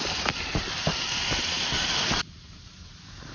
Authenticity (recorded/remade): recorded